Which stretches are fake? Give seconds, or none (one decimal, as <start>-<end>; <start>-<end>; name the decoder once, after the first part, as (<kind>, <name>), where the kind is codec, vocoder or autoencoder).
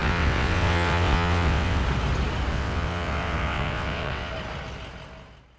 0.0-1.8 (vocoder, WaveNeXt); 2.5-4.3